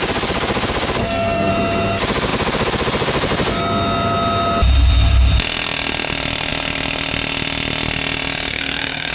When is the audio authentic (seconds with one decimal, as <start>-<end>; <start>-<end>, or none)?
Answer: 0.0-1.0; 1.5-8.5